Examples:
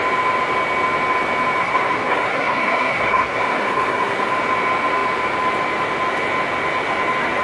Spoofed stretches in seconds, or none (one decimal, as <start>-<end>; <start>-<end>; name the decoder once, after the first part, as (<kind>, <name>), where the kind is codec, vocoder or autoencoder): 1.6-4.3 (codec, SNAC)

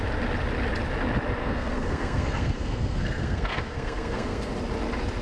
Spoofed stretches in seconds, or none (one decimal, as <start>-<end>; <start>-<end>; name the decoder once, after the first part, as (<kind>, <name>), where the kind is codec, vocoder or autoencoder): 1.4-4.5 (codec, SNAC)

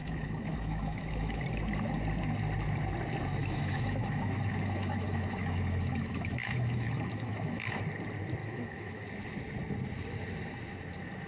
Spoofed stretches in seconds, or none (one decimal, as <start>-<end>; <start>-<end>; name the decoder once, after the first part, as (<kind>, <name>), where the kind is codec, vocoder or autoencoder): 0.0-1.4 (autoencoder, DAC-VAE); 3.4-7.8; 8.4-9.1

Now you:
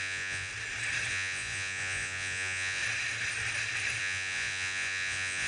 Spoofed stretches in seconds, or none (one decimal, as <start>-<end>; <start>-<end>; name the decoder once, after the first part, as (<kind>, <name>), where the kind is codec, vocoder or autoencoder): 0.0-0.5 (vocoder, Vocos); 1.1-2.8; 4.0-5.5

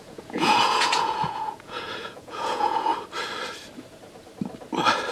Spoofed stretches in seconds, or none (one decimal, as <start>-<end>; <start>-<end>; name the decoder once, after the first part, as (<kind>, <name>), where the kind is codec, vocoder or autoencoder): 0.0-2.9 (vocoder, Vocos)